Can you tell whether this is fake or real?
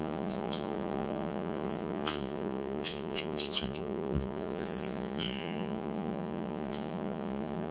fake